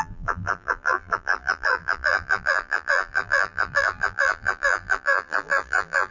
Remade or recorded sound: remade